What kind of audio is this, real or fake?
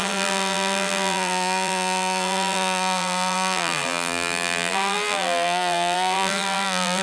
fake